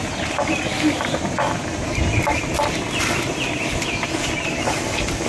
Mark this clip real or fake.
real